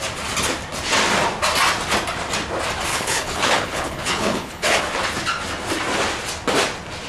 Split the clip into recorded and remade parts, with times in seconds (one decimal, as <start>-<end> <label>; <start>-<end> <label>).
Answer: 0.0-2.9 recorded; 2.9-4.8 remade; 4.8-7.1 recorded